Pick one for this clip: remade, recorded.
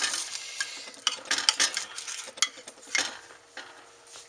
recorded